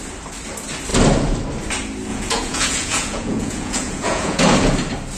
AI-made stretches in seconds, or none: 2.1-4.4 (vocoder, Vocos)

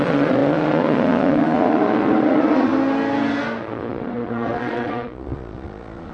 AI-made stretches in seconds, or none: 0.0-2.7 (vocoder, Vocos); 3.6-6.1

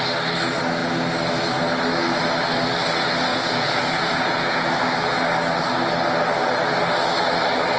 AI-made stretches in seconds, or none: 3.3-4.7 (vocoder, Vocos)